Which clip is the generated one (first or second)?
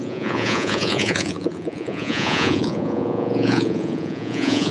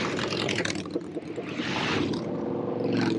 first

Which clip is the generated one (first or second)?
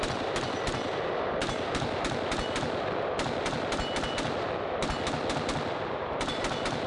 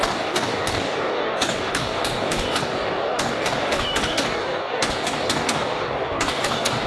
second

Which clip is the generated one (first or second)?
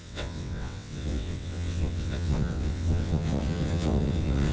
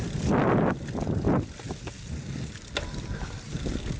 first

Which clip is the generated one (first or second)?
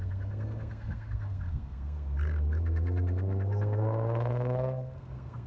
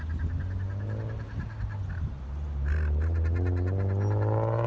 first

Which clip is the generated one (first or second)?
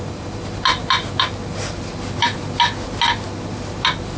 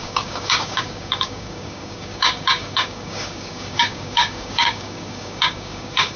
second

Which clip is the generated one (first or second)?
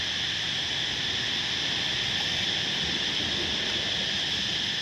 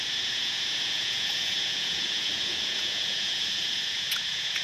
second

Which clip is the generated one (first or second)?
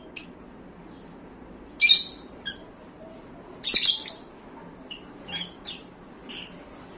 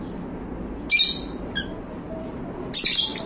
first